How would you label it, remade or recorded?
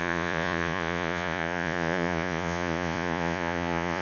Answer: remade